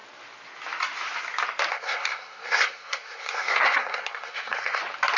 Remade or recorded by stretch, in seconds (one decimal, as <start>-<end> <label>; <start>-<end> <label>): 0.0-1.7 recorded; 1.7-4.8 remade; 4.8-5.2 recorded